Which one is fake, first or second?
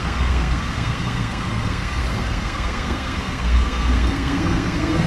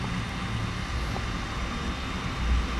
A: first